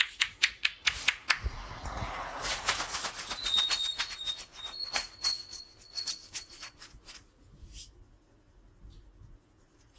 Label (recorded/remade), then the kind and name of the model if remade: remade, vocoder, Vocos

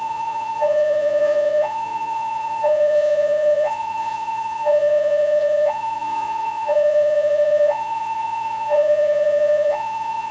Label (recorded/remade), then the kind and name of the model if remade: remade, vocoder, Vocos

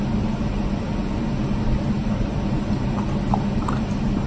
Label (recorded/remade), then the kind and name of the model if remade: recorded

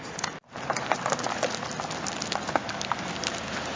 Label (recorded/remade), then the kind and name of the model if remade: recorded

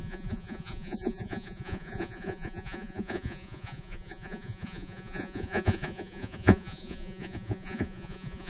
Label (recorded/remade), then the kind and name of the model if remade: remade, vocoder, Vocos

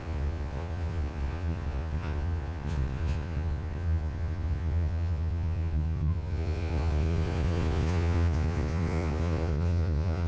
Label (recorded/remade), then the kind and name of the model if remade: remade, vocoder, Vocos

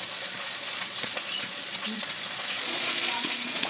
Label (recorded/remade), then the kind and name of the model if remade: remade, vocoder, Vocos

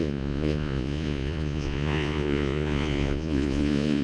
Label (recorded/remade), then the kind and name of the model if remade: remade, vocoder, Vocos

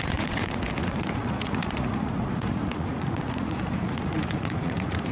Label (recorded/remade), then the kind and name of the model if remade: remade, vocoder, Vocos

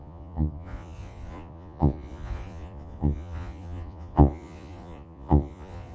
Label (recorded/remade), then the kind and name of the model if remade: remade, vocoder, Vocos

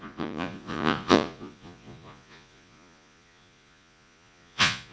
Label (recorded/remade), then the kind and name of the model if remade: remade, vocoder, Vocos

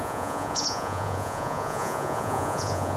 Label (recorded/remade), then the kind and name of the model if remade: remade, vocoder, Vocos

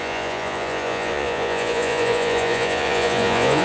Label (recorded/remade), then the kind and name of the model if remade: remade, vocoder, Vocos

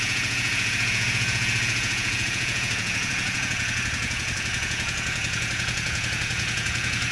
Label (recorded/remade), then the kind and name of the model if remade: remade, vocoder, Vocos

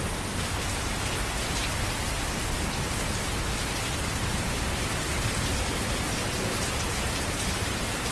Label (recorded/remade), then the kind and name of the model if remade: recorded